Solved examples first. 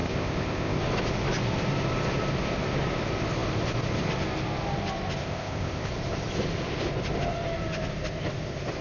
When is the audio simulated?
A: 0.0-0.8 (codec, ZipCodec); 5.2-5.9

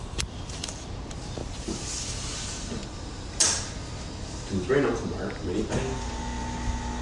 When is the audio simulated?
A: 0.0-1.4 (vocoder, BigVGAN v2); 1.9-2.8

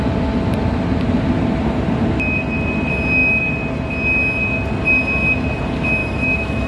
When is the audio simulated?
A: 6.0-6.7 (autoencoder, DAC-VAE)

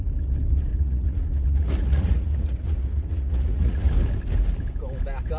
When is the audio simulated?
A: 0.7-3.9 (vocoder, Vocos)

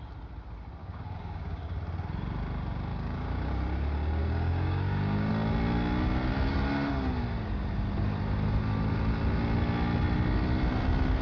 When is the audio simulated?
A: 0.8-1.8 (codec, DAC); 2.9-3.5; 4.2-5.3

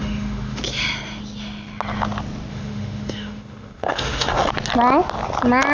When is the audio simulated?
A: 0.0-0.6 (autoencoder, DAC-VAE); 2.5-4.5

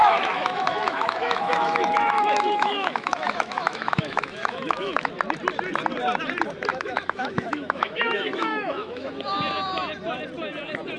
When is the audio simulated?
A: 0.0-5.1 (autoencoder, DAC-VAE); 6.7-9.1

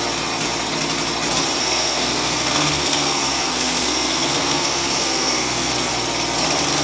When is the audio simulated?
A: 1.6-5.7 (codec, SNAC)